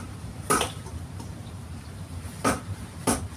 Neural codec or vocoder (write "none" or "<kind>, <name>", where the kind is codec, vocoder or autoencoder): vocoder, BigVGAN v2